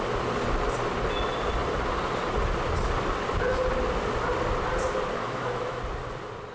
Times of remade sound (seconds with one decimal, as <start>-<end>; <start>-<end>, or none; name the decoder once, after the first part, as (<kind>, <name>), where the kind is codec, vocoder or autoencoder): 5.2-5.8 (autoencoder, DAC-VAE)